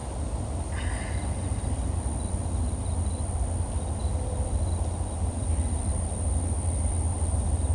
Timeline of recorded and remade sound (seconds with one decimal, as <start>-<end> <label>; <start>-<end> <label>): 0.0-7.7 recorded